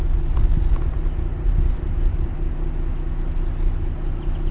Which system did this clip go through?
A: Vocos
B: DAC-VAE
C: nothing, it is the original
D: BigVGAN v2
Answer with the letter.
C